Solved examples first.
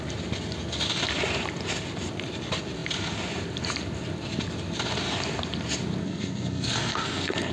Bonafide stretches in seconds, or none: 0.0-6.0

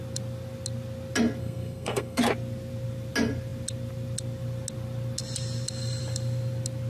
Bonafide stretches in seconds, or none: 0.0-1.4; 2.2-6.9

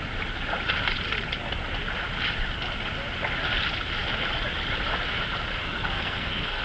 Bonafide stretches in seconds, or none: 0.0-5.6

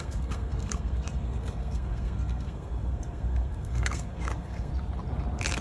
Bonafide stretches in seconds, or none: 4.7-5.6